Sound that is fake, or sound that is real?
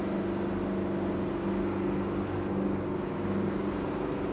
real